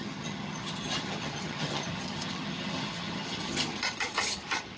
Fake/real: fake